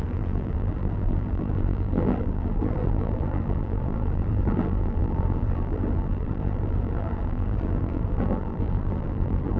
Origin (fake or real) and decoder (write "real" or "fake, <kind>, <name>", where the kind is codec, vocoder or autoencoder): fake, vocoder, BigVGAN v2